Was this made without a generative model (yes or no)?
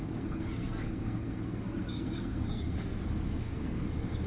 no